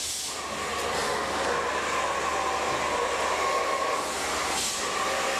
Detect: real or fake real